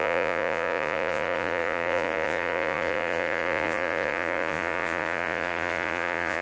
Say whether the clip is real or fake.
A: fake